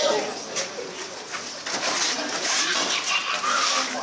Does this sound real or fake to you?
real